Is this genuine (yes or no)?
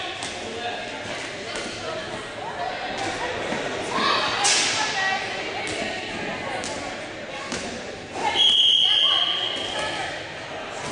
yes